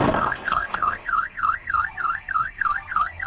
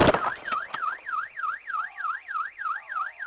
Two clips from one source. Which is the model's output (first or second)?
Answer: first